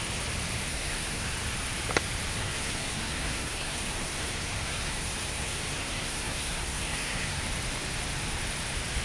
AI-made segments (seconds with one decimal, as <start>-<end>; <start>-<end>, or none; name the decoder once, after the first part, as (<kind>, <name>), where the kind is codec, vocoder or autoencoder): 0.7-1.3 (codec, SNAC); 2.3-7.4